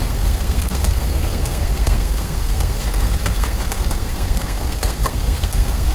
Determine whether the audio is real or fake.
fake